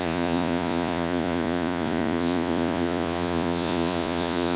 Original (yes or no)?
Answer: no